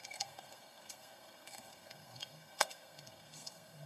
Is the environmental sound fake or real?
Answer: fake